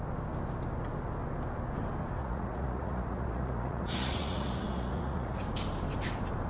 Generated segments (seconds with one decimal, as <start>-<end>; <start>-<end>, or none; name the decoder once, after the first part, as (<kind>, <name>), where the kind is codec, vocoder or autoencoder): 2.2-5.4 (vocoder, Vocos)

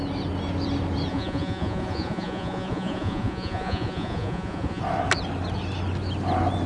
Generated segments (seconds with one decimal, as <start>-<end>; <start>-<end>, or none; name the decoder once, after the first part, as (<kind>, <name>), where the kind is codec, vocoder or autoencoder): 1.1-4.8 (vocoder, Vocos)

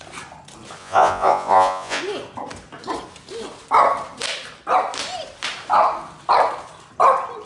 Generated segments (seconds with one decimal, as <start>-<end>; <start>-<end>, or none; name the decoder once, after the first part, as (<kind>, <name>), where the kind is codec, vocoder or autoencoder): 0.8-2.0 (vocoder, Vocos)

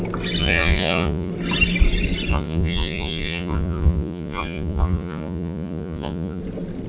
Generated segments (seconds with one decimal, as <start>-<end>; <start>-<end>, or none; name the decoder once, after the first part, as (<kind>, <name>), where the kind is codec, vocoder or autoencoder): 0.4-1.3 (vocoder, Vocos); 2.3-6.4

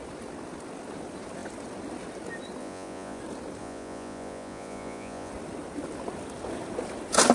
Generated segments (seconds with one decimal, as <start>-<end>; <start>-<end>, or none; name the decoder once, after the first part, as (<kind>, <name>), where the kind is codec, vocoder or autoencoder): 2.6-3.2 (vocoder, Vocos); 3.6-5.3